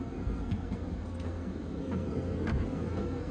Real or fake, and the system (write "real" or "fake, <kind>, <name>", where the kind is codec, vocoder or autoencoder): fake, codec, SNAC